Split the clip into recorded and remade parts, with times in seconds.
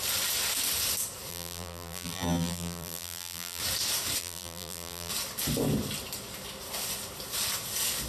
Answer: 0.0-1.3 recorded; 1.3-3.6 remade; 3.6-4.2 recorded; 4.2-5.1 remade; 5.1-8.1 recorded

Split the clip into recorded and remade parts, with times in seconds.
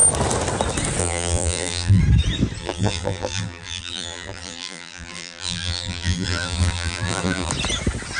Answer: 0.0-1.0 recorded; 1.0-2.0 remade; 2.0-2.6 recorded; 2.6-7.5 remade; 7.5-8.2 recorded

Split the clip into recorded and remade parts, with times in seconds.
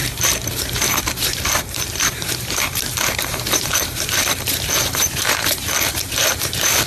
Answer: 0.0-4.1 remade; 4.1-4.9 recorded; 4.9-6.0 remade; 6.0-6.9 recorded